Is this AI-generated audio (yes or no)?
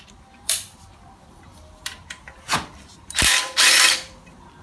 yes